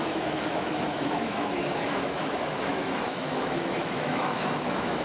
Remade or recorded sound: remade